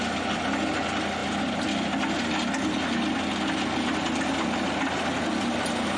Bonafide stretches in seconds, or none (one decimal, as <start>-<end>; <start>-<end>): 0.0-6.0